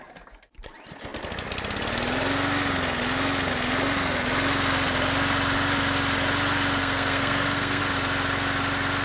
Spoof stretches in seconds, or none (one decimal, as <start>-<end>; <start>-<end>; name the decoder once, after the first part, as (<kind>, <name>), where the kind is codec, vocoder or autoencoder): 6.8-7.8 (codec, SNAC)